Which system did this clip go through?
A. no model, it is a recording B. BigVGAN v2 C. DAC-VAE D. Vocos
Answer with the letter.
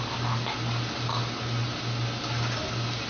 A